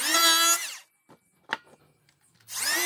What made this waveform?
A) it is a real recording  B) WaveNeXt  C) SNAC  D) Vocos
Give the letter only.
A